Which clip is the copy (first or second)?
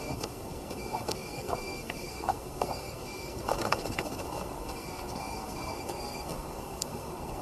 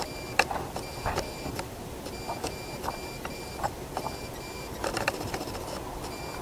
first